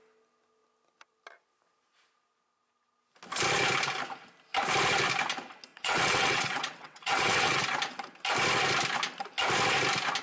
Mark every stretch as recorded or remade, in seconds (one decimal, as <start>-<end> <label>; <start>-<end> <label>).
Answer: 0.0-5.7 recorded; 5.7-7.6 remade; 7.6-10.2 recorded